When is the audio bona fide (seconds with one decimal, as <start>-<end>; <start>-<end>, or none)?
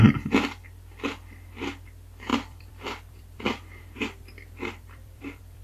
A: 0.0-2.3